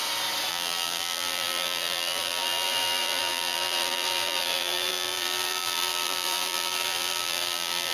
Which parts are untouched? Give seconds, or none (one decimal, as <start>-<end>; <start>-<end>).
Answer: 0.0-0.5